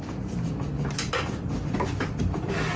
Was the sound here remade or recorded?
recorded